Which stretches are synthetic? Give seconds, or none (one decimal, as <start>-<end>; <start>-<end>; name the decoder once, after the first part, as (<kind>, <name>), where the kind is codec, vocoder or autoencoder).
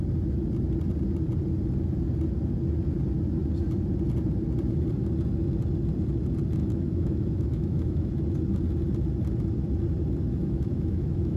6.6-8.1 (autoencoder, DAC-VAE); 10.4-11.4